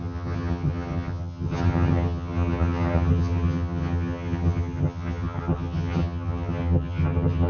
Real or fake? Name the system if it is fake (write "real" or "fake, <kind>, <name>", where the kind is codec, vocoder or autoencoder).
fake, vocoder, HiFi-GAN